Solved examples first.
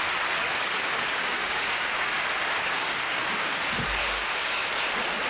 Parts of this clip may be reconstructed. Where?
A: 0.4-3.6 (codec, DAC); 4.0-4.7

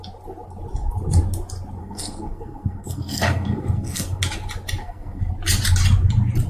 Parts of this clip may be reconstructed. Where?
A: 1.8-4.2 (codec, SNAC); 4.8-5.3

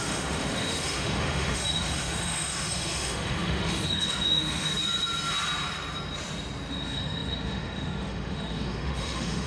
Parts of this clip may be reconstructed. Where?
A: 0.0-4.7 (autoencoder, DAC-VAE); 6.7-9.5

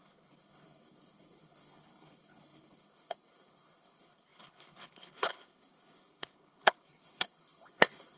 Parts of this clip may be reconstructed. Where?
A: 0.0-8.2 (codec, HILCodec)

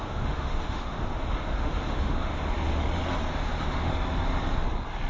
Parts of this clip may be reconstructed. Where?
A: 0.0-2.8 (autoencoder, DAC-VAE); 3.3-3.9

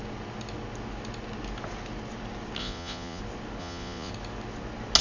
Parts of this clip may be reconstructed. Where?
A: 2.6-3.2 (vocoder, Vocos); 3.6-4.1

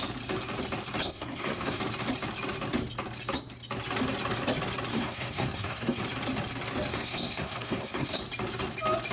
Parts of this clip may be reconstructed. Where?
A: 1.0-1.8 (codec, SNAC); 4.9-6.0; 6.9-8.2